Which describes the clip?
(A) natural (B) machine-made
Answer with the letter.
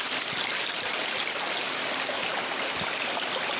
A